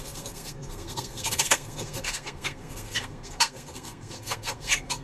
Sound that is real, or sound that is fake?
fake